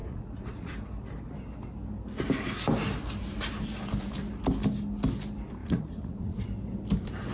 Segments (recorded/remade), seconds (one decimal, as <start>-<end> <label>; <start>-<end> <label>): 0.0-0.7 remade; 0.7-5.6 recorded; 5.6-6.4 remade; 6.4-7.3 recorded